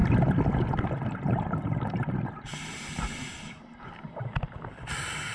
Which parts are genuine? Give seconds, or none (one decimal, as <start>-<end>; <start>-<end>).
0.0-5.3